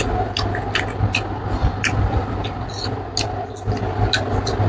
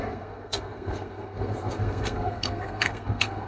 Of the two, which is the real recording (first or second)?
first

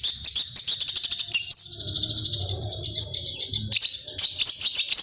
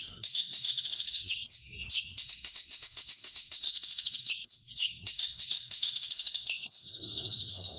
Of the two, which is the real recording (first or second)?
first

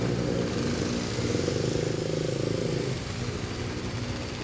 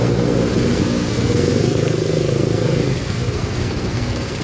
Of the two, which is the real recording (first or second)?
first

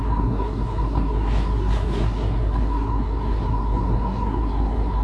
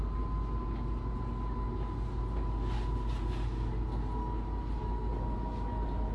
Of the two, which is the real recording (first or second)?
second